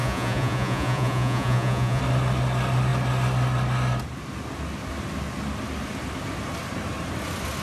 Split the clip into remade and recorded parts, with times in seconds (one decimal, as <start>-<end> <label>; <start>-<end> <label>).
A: 0.0-2.0 remade; 2.0-7.6 recorded